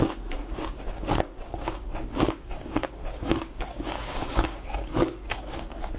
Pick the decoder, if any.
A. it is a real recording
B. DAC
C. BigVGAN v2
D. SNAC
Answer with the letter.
B